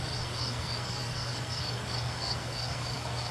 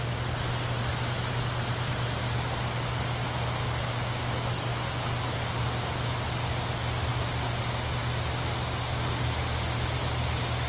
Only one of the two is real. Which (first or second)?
second